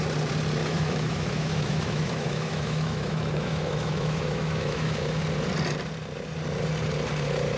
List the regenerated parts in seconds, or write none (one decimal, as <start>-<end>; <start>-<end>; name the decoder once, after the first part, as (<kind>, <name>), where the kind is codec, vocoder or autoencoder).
0.6-5.2 (autoencoder, DAC-VAE)